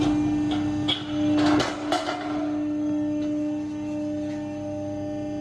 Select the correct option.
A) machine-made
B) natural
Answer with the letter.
B